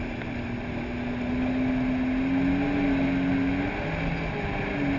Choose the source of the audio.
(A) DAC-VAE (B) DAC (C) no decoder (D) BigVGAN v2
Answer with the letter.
C